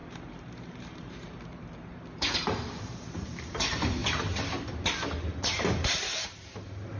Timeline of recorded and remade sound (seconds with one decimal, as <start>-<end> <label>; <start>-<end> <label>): 0.0-4.0 remade; 4.0-5.3 recorded; 5.3-7.0 remade